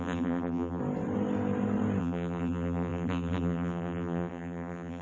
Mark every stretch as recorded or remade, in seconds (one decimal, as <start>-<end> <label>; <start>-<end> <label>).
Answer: 0.0-0.8 remade; 0.8-2.0 recorded; 2.0-5.0 remade